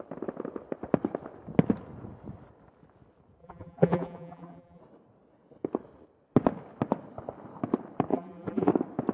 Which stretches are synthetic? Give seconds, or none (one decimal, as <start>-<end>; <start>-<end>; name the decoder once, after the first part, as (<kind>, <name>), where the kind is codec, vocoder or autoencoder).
3.4-4.8 (vocoder, BigVGAN v2); 8.1-8.7